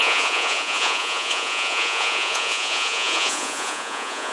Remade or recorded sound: remade